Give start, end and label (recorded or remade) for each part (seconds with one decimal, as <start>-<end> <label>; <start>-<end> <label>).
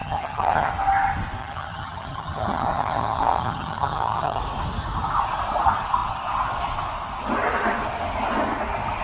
0.0-0.7 remade; 0.7-1.4 recorded; 1.4-4.4 remade; 4.4-9.0 recorded